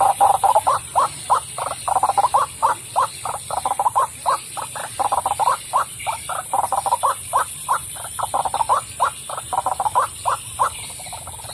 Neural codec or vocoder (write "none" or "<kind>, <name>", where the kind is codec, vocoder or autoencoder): vocoder, BigVGAN v2